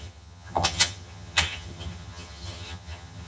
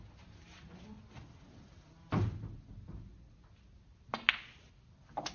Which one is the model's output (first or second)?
first